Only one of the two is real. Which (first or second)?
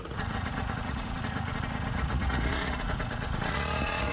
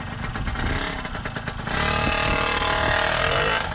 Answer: second